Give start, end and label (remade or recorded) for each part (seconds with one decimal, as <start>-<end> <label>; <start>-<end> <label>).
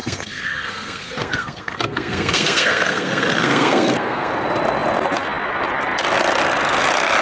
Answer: 0.0-4.3 remade; 4.3-7.2 recorded